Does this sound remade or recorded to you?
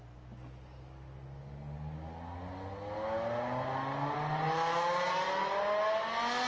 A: recorded